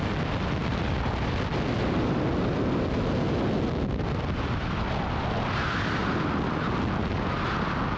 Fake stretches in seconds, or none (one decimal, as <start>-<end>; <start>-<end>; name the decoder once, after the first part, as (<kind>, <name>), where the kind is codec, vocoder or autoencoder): none